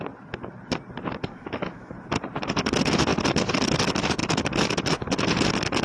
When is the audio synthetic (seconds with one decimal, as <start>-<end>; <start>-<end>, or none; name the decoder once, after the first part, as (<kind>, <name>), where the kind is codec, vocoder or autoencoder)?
1.3-1.9 (autoencoder, DAC-VAE)